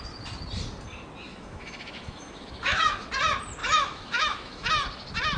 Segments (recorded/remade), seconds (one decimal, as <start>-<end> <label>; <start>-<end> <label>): 0.0-1.3 recorded; 1.3-3.1 remade; 3.1-3.6 recorded; 3.6-4.7 remade; 4.7-5.4 recorded